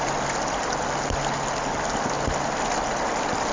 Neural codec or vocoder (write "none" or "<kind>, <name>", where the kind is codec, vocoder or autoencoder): none